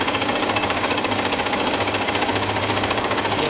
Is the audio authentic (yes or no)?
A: no